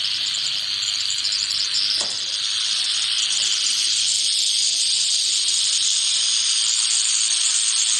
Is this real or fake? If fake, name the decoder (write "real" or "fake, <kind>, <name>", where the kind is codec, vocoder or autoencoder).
real